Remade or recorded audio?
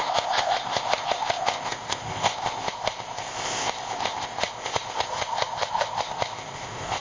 remade